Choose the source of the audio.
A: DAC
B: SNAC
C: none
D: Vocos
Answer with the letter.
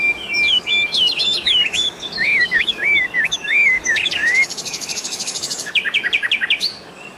A